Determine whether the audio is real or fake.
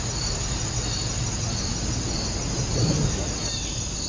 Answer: real